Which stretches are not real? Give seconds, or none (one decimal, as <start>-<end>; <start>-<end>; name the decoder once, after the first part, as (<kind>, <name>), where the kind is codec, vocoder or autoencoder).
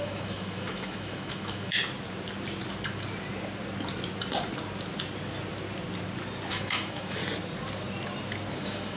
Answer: 0.0-1.7 (autoencoder, DAC-VAE); 6.5-7.2; 8.5-9.0